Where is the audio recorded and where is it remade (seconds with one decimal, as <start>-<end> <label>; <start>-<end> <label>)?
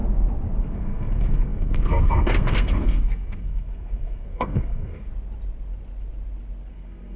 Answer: 0.0-0.6 recorded; 0.6-5.1 remade; 5.1-6.7 recorded; 6.7-7.2 remade